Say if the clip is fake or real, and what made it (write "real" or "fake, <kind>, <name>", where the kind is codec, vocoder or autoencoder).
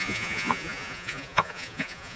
fake, vocoder, Vocos